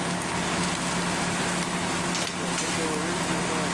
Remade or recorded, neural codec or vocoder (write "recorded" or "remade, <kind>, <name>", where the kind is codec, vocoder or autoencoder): recorded